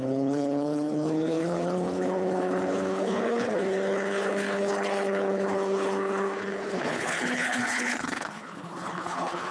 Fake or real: fake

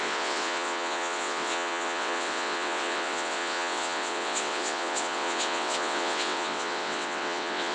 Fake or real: fake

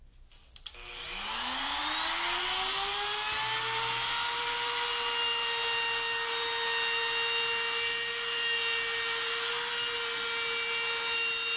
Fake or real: real